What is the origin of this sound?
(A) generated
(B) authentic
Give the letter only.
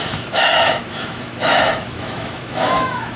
A